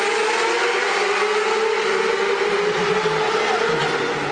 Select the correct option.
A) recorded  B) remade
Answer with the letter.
A